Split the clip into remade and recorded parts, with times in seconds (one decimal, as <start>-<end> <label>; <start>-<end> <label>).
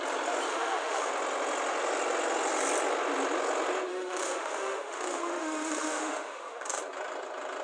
0.0-0.5 recorded; 0.5-1.1 remade; 1.1-3.9 recorded; 3.9-6.8 remade; 6.8-7.6 recorded